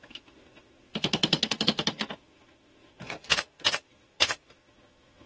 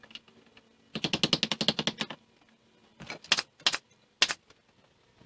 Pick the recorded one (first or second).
second